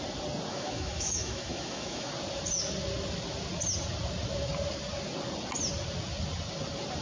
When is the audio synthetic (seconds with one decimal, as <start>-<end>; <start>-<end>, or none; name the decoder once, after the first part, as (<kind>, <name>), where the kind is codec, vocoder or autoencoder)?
0.5-2.1 (autoencoder, DAC-VAE)